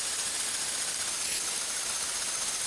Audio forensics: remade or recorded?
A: recorded